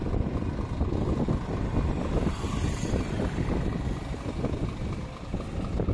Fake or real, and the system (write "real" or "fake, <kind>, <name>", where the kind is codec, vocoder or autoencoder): real